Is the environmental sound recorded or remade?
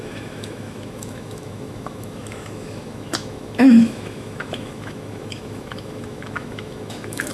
remade